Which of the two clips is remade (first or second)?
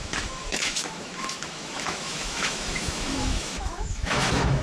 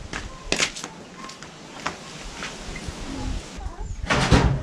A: first